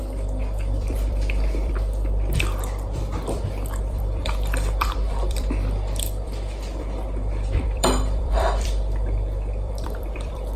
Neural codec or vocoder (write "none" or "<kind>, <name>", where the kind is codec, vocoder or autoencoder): vocoder, BigVGAN v2